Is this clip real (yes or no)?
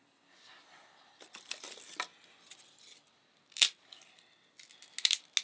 yes